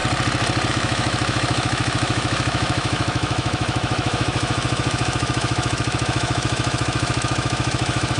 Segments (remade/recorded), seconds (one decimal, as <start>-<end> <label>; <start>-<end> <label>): 0.0-0.7 recorded; 0.7-8.2 remade